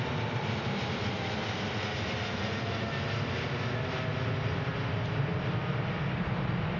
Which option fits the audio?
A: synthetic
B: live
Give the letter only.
B